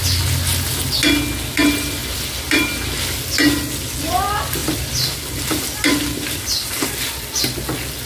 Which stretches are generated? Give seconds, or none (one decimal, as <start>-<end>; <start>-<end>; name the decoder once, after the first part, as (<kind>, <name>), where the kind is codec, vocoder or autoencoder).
2.0-3.0 (vocoder, BigVGAN v2); 4.6-7.4